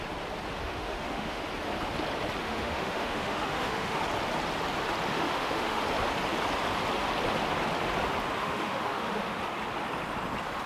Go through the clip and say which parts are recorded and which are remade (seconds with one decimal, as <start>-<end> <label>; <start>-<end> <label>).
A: 0.0-0.6 recorded; 0.6-1.4 remade; 1.4-2.4 recorded; 2.4-4.0 remade; 4.0-5.1 recorded; 5.1-5.8 remade; 5.8-8.4 recorded; 8.4-9.4 remade; 9.4-10.7 recorded